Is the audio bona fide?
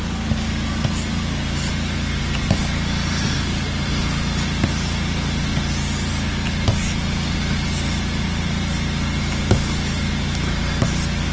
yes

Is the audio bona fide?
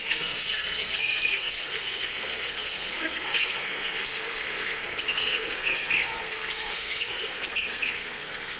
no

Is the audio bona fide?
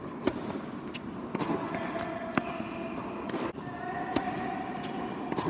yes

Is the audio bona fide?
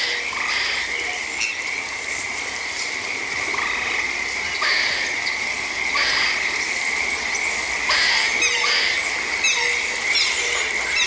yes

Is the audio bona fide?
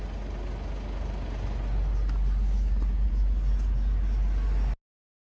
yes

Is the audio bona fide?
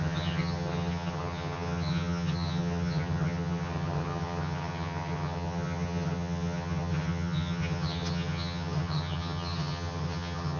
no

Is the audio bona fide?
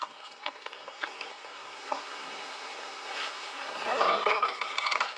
no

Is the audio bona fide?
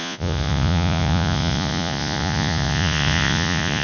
no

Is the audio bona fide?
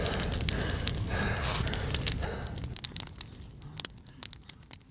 yes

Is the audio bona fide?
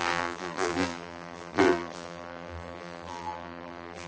no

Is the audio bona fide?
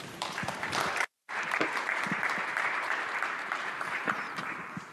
no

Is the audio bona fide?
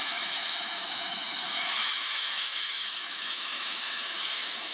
no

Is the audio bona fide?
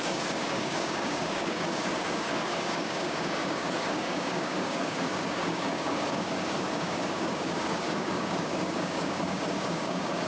no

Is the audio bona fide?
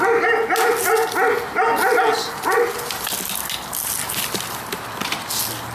yes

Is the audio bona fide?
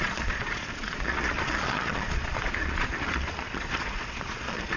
no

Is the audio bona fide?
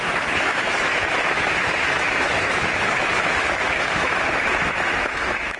no